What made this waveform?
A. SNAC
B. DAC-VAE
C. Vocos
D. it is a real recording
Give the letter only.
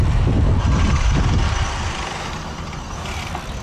D